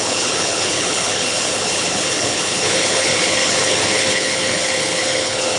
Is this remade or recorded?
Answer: remade